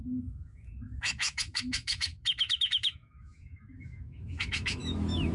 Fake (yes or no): yes